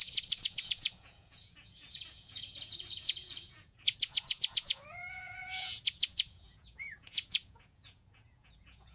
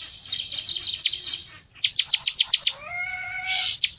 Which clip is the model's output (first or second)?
first